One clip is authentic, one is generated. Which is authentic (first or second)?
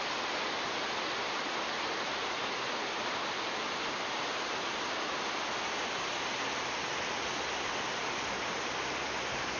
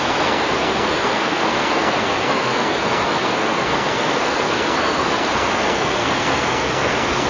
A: first